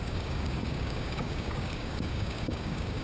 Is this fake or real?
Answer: fake